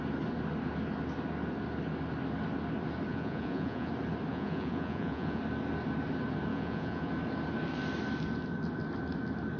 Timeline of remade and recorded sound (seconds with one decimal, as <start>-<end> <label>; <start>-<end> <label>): 0.0-3.1 recorded; 3.1-3.9 remade; 3.9-4.3 recorded; 4.3-5.4 remade; 5.4-6.5 recorded; 6.5-7.1 remade; 7.1-9.6 recorded